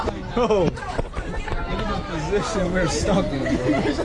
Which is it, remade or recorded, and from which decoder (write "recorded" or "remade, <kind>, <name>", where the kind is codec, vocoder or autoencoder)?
recorded